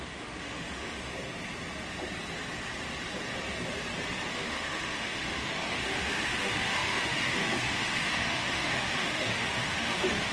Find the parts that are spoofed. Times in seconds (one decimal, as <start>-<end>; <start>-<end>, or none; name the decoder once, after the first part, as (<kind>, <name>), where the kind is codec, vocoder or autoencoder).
0.0-1.1 (autoencoder, DAC-VAE); 4.3-10.3